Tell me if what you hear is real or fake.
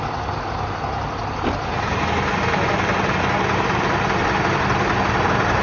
real